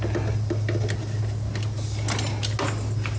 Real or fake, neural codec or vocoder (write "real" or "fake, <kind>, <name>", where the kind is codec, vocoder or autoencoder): real